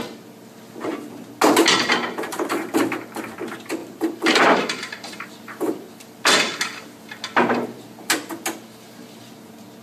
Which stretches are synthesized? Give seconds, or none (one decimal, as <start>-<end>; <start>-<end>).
2.3-3.2; 3.8-5.9